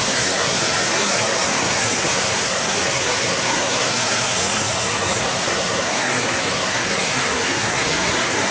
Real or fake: fake